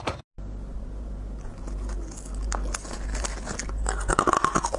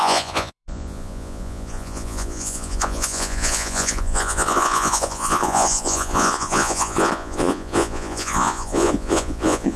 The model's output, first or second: second